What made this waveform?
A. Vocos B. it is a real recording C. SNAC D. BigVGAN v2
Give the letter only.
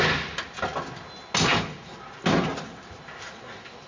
B